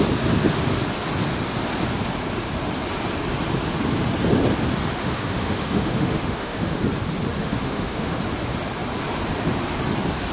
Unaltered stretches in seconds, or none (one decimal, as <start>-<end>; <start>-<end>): 0.0-5.0; 6.8-7.4; 8.2-10.3

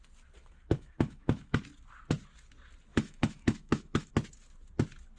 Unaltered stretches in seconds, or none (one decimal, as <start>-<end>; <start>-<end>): 0.0-0.4; 1.6-2.9; 4.1-5.2

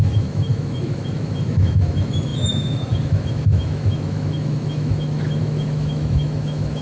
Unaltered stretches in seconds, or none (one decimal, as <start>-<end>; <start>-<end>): none

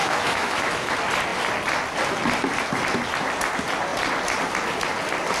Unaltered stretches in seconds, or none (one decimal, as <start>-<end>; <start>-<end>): 0.9-5.4